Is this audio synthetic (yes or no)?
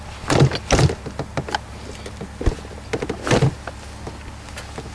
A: no